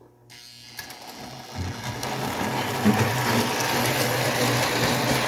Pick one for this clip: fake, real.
real